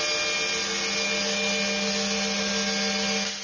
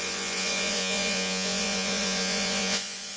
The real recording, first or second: first